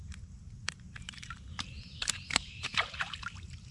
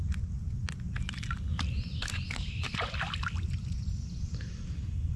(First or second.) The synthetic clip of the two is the first